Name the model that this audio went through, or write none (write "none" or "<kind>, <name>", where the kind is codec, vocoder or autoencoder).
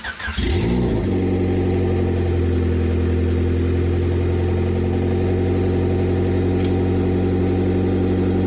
none